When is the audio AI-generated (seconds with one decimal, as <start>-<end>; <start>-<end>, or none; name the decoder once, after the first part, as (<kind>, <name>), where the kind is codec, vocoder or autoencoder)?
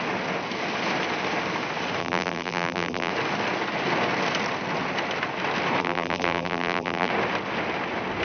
2.0-3.1 (vocoder, BigVGAN v2); 5.8-7.1